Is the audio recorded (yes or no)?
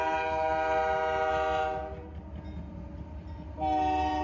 yes